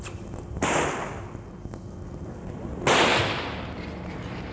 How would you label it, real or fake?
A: real